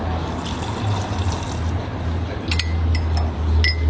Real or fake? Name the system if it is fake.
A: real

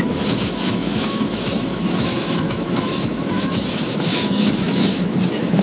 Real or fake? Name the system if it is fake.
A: fake, autoencoder, DAC-VAE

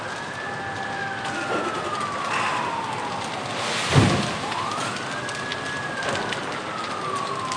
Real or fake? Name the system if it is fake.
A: real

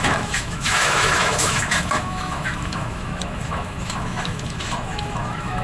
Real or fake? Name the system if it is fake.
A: fake, autoencoder, DAC-VAE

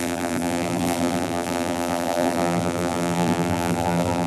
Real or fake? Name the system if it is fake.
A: fake, vocoder, BigVGAN v2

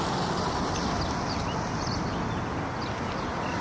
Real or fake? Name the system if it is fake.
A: real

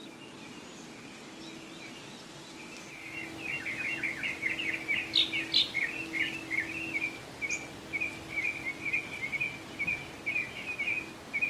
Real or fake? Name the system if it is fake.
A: real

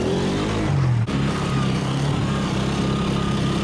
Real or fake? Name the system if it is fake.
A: real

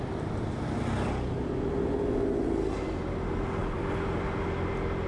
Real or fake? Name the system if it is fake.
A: real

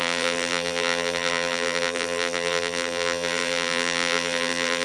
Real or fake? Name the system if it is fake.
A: fake, vocoder, BigVGAN v2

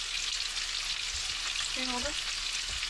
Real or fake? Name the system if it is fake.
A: real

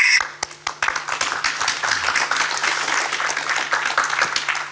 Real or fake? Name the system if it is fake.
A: real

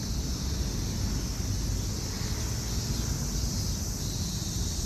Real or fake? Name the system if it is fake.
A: real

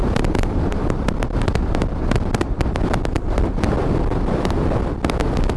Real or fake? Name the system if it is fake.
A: fake, vocoder, BigVGAN v2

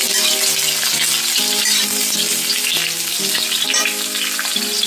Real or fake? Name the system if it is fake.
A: real